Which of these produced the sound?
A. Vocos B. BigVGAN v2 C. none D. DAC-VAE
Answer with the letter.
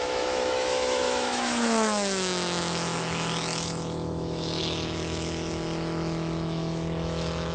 D